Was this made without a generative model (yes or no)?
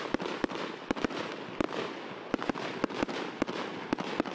yes